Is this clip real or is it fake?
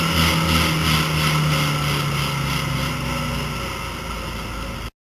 real